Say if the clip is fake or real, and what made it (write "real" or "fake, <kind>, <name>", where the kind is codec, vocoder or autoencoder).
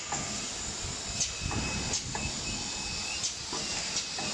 real